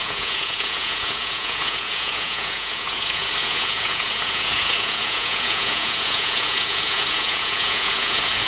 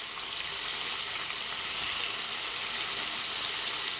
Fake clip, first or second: first